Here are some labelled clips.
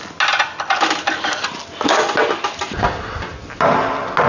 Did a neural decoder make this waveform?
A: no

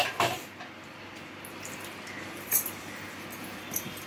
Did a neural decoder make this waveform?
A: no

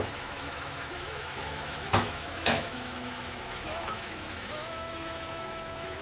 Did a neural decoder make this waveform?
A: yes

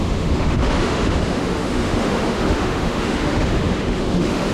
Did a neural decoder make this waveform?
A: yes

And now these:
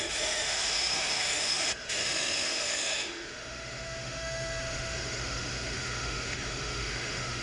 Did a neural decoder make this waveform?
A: yes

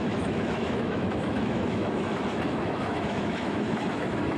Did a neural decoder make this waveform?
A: yes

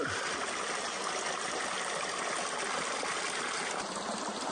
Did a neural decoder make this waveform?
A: no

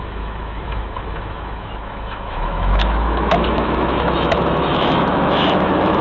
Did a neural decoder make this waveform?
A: yes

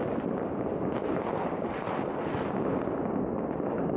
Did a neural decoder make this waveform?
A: no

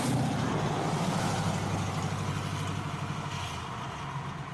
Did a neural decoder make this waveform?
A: no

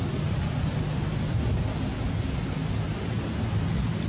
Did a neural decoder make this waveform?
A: no